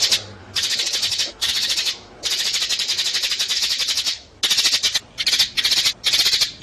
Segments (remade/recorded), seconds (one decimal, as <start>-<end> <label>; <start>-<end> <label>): 0.0-0.4 recorded; 0.4-4.4 remade; 4.4-6.6 recorded